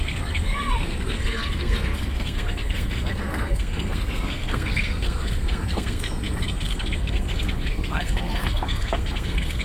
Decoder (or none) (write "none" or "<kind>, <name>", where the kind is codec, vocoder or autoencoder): codec, SNAC